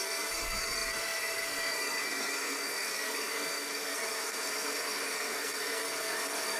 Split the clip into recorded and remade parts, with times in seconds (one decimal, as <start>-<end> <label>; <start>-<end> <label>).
0.0-6.6 remade

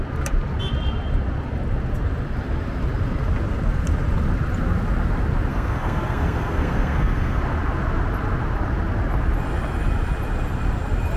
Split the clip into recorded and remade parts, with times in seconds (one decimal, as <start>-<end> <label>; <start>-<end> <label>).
0.0-5.5 recorded; 5.5-7.4 remade; 7.4-11.2 recorded